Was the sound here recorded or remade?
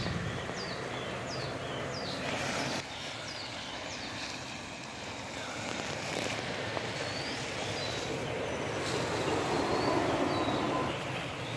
recorded